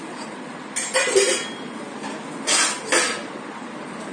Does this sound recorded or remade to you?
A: recorded